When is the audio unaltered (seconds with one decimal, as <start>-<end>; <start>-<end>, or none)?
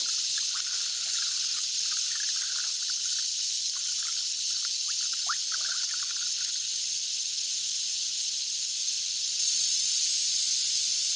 0.0-11.2